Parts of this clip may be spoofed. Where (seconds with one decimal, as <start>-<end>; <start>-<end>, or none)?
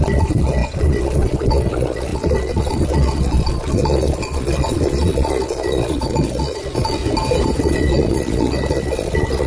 0.0-7.0; 7.6-9.5